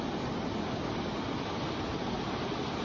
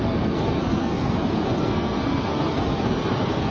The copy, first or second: second